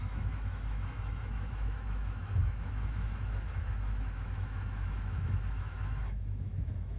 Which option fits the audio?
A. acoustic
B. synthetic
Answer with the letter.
B